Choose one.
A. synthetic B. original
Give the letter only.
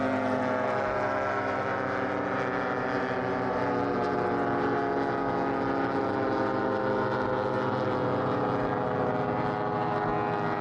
B